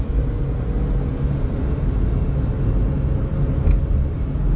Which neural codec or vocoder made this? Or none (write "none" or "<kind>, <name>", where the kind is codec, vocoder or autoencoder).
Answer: none